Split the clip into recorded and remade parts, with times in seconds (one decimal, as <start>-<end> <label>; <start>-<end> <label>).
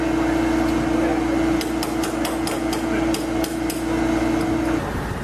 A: 0.0-5.2 recorded